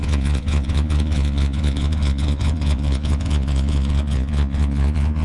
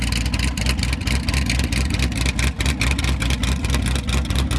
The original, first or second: second